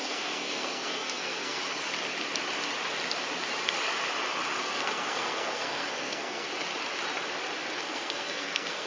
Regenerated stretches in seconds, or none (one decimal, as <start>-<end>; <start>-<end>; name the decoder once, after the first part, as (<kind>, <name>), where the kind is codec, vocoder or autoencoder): 0.0-1.6 (codec, SNAC); 4.6-6.5; 7.8-8.9